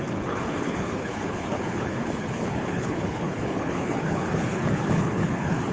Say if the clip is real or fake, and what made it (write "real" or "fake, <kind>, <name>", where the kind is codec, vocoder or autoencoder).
fake, codec, HILCodec